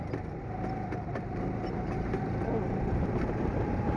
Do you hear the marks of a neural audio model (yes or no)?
yes